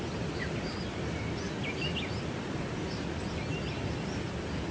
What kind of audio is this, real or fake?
real